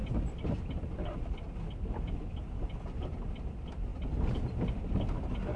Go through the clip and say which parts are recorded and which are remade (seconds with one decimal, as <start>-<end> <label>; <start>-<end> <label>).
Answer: 0.0-5.6 recorded